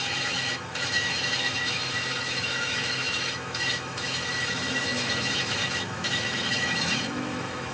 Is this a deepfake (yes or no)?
yes